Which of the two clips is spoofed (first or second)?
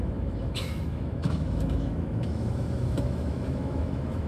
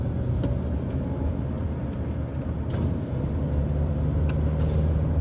first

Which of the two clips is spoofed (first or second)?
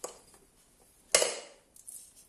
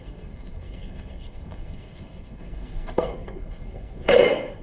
second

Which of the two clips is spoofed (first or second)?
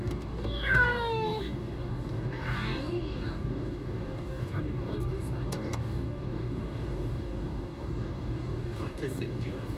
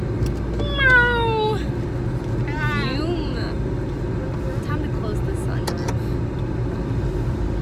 first